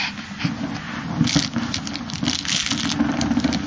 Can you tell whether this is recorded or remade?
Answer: recorded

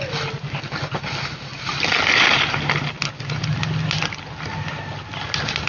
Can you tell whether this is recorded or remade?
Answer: recorded